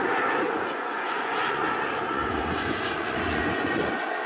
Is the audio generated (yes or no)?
yes